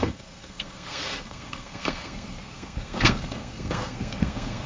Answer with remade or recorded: remade